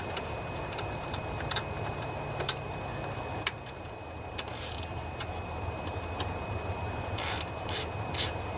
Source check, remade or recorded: remade